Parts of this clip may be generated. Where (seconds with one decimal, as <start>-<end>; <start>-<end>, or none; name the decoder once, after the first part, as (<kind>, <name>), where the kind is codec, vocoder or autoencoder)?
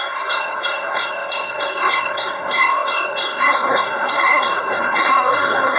0.0-5.8 (codec, SNAC)